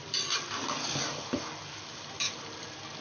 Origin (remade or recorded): recorded